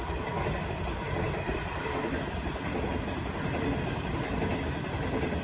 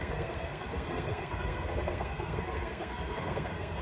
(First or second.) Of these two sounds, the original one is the first